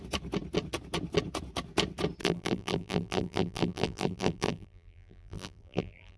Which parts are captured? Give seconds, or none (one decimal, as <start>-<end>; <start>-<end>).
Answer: 0.0-2.2